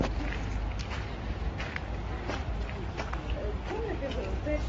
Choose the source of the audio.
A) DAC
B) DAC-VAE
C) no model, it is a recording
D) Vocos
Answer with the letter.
C